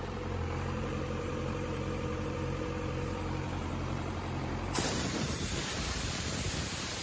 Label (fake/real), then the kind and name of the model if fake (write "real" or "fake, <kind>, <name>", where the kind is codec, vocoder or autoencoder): fake, vocoder, BigVGAN v2